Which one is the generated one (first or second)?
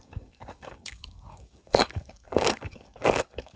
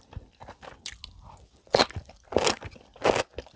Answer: first